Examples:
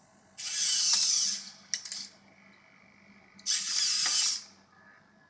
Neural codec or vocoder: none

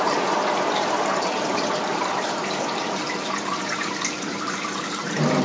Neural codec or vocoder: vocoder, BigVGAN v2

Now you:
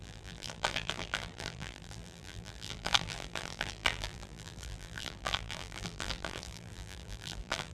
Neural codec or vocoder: vocoder, BigVGAN v2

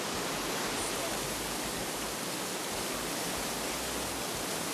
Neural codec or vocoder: none